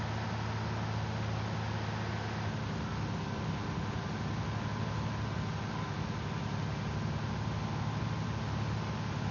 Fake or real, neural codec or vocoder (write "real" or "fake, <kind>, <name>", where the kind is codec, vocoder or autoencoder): real